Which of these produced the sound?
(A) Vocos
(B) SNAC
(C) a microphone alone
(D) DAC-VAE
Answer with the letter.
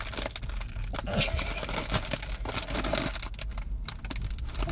C